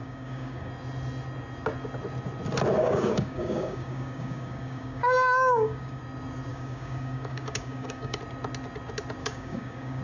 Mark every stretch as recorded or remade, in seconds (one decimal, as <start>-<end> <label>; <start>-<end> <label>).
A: 0.0-0.7 remade; 0.7-2.8 recorded; 2.8-6.0 remade; 6.0-6.5 recorded; 6.5-8.2 remade; 8.2-9.2 recorded; 9.2-10.0 remade